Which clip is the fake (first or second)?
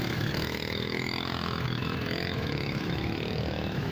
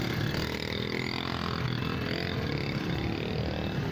first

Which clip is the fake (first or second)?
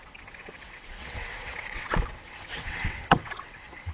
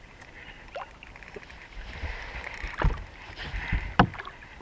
first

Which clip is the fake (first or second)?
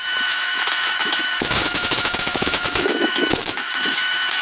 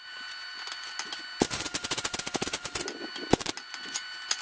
first